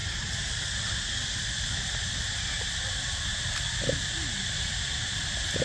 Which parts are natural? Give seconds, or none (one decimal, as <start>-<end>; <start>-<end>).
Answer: 0.0-5.6